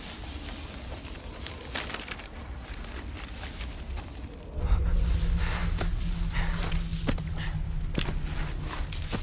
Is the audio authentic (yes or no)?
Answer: yes